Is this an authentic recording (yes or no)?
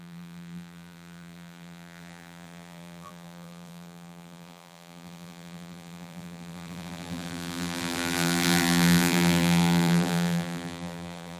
no